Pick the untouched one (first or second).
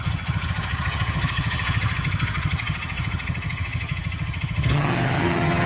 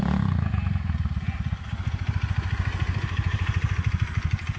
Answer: second